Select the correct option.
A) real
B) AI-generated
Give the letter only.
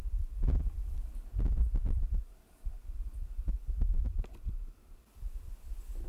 A